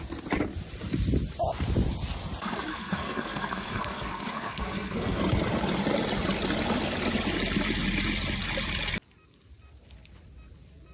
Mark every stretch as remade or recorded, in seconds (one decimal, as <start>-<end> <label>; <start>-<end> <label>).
0.0-2.7 recorded; 2.7-5.2 remade; 5.2-10.9 recorded